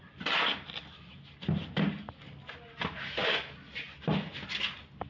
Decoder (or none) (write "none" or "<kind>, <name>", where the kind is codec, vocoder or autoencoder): none